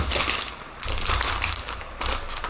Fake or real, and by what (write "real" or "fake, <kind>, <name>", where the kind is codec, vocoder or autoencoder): real